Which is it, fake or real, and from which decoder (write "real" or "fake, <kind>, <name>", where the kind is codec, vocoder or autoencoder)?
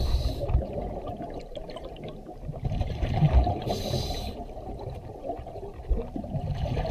fake, vocoder, BigVGAN v2